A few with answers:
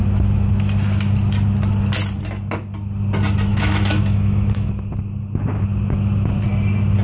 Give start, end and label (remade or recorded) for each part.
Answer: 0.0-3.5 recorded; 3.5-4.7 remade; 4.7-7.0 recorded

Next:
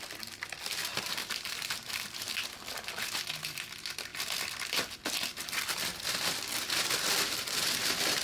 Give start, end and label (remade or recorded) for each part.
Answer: 0.0-0.9 recorded; 0.9-2.3 remade; 2.3-8.2 recorded

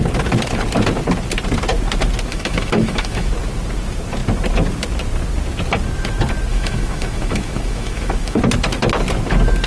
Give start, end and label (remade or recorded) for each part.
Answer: 0.0-2.3 recorded; 2.3-3.3 remade; 3.3-6.5 recorded; 6.5-8.4 remade; 8.4-9.7 recorded

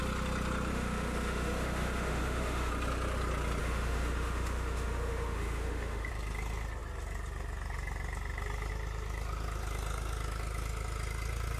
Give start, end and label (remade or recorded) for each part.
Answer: 0.0-0.7 recorded; 0.7-2.7 remade; 2.7-3.6 recorded; 3.6-6.1 remade; 6.1-11.6 recorded

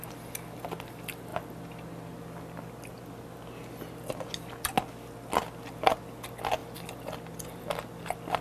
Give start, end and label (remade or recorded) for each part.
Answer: 0.0-8.4 recorded